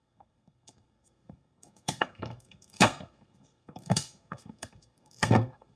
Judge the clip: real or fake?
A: fake